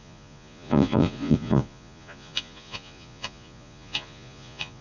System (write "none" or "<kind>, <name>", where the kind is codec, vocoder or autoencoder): vocoder, Vocos